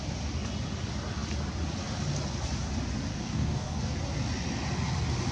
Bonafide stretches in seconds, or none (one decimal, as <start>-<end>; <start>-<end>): 0.0-3.1; 3.8-5.3